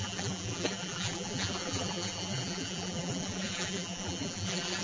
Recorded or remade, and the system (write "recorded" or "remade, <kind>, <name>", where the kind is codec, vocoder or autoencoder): remade, vocoder, BigVGAN v2